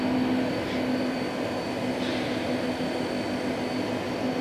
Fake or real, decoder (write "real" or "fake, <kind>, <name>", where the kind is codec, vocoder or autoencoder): real